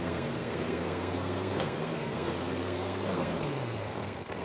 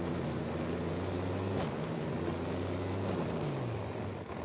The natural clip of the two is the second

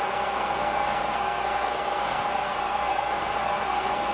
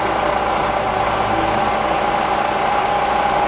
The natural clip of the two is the second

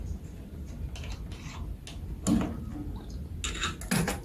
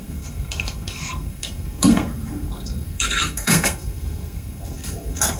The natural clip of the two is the first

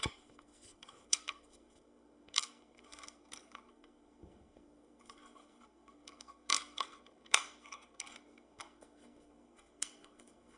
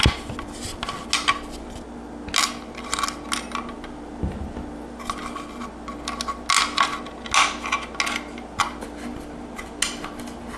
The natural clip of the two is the second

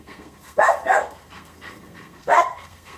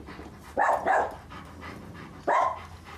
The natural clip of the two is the second